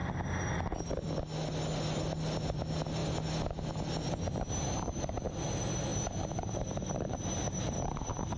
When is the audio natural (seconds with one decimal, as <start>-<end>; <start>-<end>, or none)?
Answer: 0.0-5.9